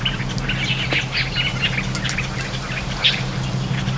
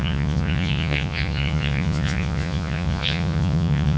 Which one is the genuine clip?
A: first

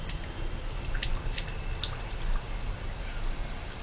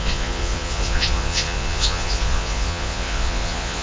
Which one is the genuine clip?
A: first